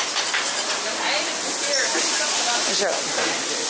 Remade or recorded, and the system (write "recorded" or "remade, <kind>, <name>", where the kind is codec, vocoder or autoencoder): recorded